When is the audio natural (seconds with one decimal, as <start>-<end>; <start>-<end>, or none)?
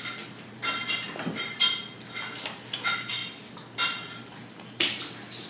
0.0-5.5